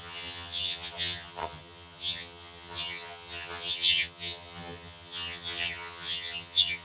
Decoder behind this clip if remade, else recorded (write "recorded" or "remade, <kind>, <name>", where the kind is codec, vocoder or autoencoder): remade, vocoder, HiFi-GAN